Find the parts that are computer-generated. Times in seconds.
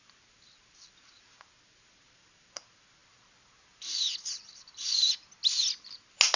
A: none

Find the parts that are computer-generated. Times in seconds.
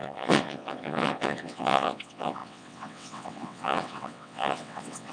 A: 0.0-5.1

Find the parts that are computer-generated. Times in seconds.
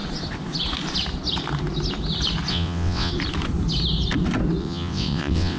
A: 2.5-3.1; 4.6-5.6